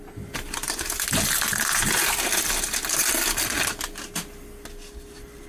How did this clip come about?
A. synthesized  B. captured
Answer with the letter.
B